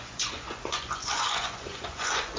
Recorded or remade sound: remade